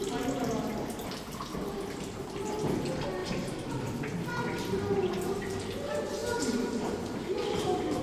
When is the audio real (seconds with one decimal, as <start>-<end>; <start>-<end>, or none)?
0.0-3.2; 3.7-6.2